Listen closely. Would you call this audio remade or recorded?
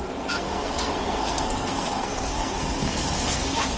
remade